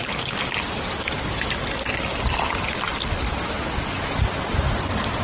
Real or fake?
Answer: real